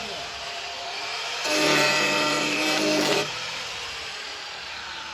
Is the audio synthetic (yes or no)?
yes